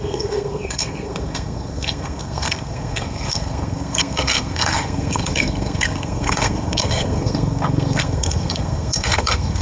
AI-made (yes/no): yes